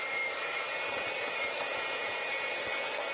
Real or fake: real